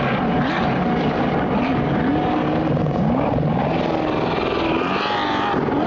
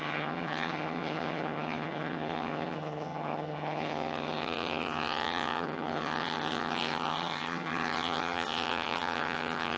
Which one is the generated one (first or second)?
second